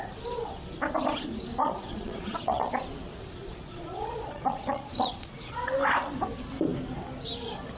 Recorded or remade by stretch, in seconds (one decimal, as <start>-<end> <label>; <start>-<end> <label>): 0.0-1.6 recorded; 1.6-2.7 remade; 2.7-3.4 recorded; 3.4-5.6 remade; 5.6-7.8 recorded